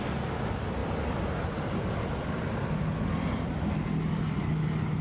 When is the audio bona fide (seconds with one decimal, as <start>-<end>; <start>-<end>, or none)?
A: 0.0-5.0